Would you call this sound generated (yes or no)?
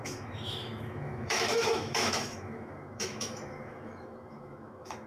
yes